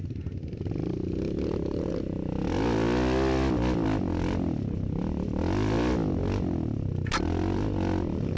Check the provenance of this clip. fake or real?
real